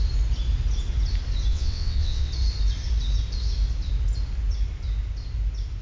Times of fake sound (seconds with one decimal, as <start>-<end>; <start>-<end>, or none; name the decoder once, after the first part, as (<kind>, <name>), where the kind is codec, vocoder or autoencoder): 1.5-2.3 (vocoder, WaveNeXt)